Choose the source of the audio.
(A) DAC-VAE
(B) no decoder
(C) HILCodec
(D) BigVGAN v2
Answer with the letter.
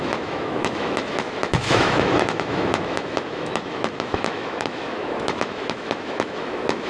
A